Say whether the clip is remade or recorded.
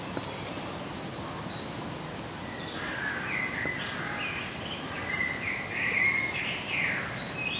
recorded